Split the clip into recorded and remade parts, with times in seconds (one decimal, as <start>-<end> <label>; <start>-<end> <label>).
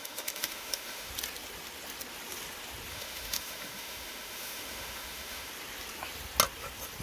0.0-1.1 remade; 1.1-2.9 recorded; 2.9-5.5 remade; 5.5-7.0 recorded